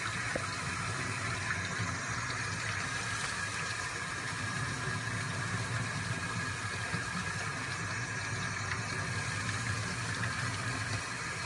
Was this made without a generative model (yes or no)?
yes